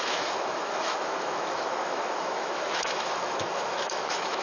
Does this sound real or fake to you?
fake